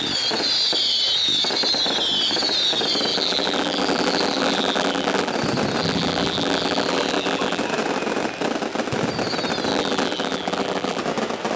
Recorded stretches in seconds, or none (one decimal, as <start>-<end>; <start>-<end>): 0.0-3.1; 5.3-5.8; 7.6-9.7; 11.0-11.6